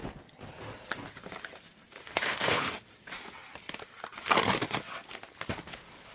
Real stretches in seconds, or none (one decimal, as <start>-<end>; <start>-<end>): 0.0-2.0; 2.7-6.1